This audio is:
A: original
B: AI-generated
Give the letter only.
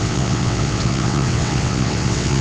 B